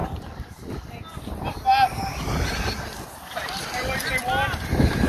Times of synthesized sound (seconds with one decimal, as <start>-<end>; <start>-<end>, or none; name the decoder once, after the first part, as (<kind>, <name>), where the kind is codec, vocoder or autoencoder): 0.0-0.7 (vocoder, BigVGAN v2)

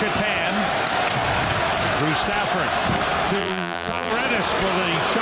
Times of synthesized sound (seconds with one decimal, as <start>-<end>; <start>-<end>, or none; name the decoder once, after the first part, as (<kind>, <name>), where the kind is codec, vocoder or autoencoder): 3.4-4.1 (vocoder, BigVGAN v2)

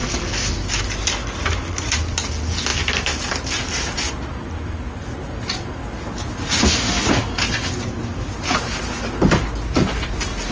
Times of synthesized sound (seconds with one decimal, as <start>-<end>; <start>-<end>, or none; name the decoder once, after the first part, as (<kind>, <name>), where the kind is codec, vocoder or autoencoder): 2.7-4.1 (vocoder, BigVGAN v2)

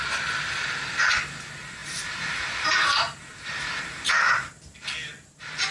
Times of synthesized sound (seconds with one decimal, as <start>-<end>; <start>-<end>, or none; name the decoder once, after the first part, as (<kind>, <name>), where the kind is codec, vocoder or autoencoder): 1.8-4.2 (vocoder, BigVGAN v2); 5.1-5.7

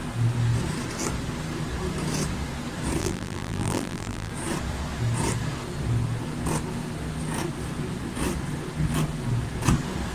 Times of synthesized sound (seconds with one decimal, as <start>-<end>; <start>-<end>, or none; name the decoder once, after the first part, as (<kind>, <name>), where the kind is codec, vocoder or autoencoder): 3.0-4.3 (vocoder, BigVGAN v2)